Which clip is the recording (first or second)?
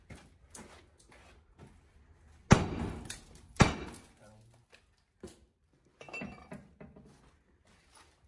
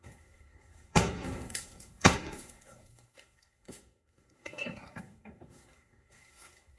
first